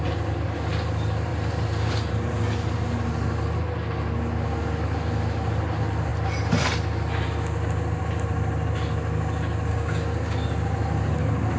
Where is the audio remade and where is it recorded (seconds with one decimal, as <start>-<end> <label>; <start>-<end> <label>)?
0.0-9.7 recorded; 9.7-10.4 remade; 10.4-11.6 recorded